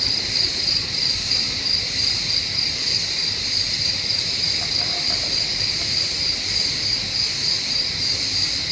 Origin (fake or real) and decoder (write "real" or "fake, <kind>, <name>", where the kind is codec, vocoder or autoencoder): real